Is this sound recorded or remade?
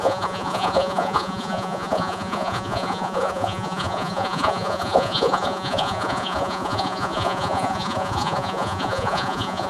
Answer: remade